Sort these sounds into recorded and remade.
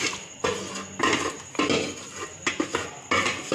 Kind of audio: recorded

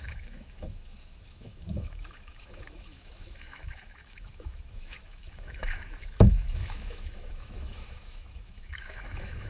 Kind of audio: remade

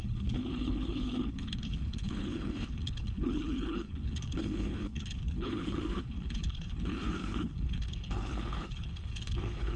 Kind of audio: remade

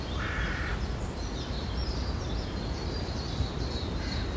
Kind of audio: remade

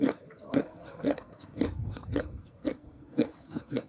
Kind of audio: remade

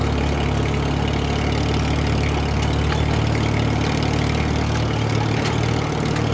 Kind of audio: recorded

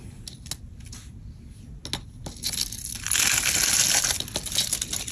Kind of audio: recorded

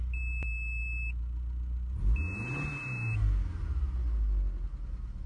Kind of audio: recorded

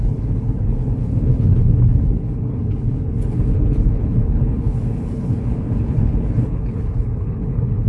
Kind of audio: remade